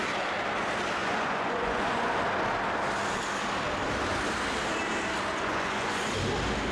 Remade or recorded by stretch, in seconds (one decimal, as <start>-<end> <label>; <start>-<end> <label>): 0.0-1.0 recorded; 1.0-2.1 remade; 2.1-5.3 recorded; 5.3-6.1 remade; 6.1-6.7 recorded